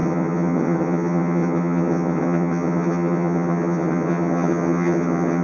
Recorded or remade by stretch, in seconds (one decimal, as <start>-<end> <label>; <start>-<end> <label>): 0.0-5.4 remade